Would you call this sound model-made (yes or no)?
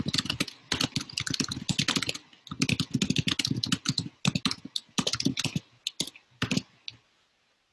no